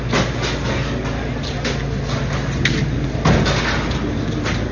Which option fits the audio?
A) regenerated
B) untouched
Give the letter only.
B